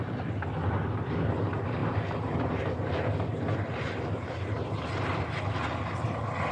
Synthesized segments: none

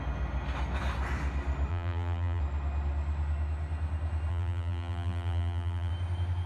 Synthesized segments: 1.7-2.4 (vocoder, BigVGAN v2); 4.3-5.9